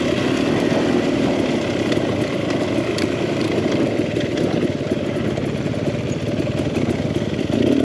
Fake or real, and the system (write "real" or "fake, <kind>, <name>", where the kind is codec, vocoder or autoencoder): real